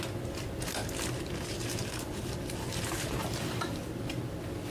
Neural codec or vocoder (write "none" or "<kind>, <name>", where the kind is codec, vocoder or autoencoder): none